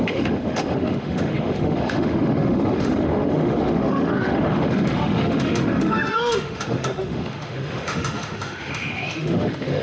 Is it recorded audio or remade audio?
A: remade